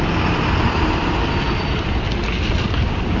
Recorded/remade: recorded